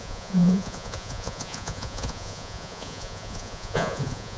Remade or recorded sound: remade